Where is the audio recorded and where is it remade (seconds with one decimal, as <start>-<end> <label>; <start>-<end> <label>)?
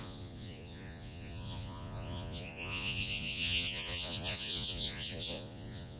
0.0-6.0 remade